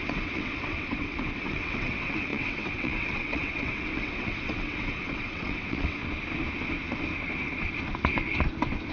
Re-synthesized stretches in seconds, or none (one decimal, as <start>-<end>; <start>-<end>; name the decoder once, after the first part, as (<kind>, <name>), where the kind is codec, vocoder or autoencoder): 0.0-6.0 (vocoder, WaveNeXt)